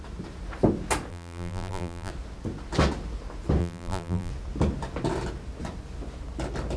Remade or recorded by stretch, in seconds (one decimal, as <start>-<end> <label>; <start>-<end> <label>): 0.0-1.1 recorded; 1.1-2.1 remade; 2.1-3.6 recorded; 3.6-4.3 remade; 4.3-6.8 recorded